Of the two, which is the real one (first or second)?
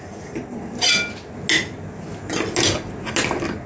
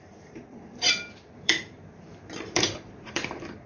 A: first